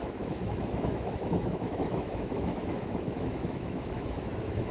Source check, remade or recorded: remade